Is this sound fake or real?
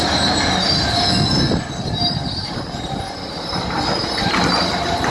real